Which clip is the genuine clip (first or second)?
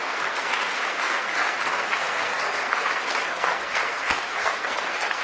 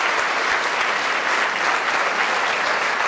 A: second